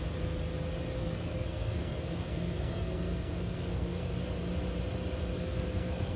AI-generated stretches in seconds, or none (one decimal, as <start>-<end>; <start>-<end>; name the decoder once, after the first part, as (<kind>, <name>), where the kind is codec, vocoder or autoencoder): 1.0-4.1 (codec, SNAC); 5.2-6.2